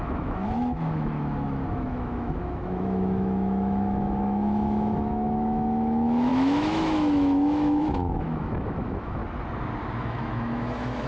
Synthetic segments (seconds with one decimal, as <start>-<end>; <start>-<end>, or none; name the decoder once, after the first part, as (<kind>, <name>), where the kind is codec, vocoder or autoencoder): 0.0-9.2 (autoencoder, DAC-VAE); 10.0-11.1